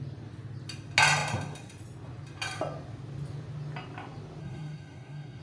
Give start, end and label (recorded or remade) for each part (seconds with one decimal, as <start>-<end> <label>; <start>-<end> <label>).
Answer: 0.0-4.4 recorded; 4.4-5.4 remade